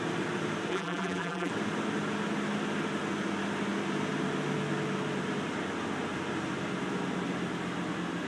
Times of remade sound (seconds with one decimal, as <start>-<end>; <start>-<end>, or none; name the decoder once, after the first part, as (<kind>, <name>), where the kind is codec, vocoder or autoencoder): 0.7-1.5 (vocoder, BigVGAN v2)